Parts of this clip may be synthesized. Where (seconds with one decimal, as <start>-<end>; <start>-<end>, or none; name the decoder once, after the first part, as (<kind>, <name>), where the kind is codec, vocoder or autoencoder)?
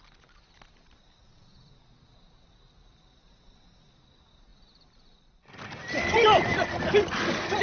4.5-6.7 (vocoder, BigVGAN v2)